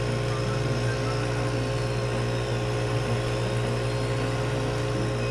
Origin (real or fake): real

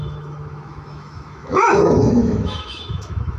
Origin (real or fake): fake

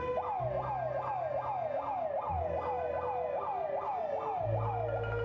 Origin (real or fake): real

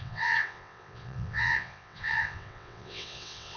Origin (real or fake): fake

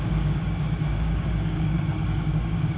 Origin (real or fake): fake